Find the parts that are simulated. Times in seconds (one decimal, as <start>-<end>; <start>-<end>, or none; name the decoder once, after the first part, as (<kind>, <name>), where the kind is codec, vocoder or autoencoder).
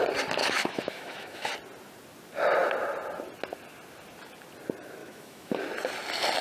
0.4-1.5 (autoencoder, DAC-VAE); 5.0-5.6